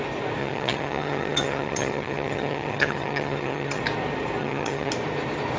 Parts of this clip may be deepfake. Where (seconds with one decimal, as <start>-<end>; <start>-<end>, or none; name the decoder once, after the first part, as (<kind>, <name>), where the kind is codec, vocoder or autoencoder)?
0.4-3.8 (vocoder, HiFi-GAN); 4.4-4.9